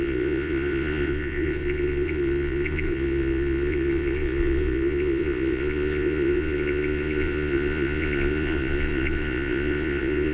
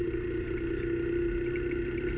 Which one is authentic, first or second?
second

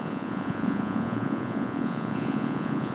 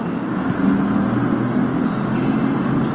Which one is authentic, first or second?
second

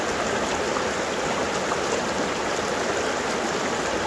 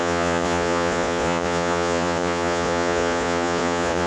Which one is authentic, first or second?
first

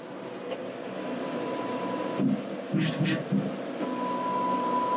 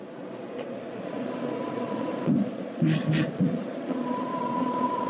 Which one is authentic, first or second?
first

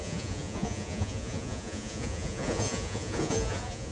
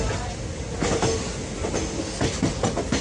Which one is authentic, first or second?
second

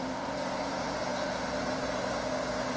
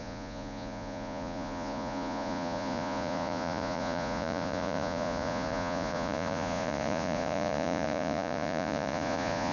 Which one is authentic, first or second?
first